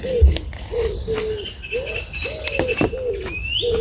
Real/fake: real